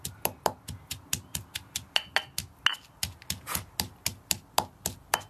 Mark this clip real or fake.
real